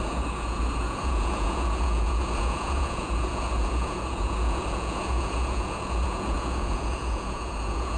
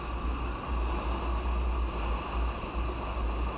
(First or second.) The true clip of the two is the second